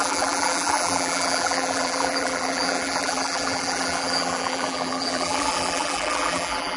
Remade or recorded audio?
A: remade